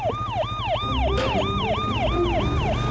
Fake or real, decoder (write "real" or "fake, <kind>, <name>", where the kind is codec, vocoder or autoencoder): real